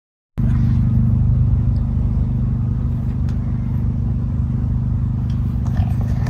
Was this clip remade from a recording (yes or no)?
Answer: no